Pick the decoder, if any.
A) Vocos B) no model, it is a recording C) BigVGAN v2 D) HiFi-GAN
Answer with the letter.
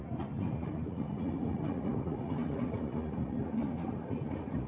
A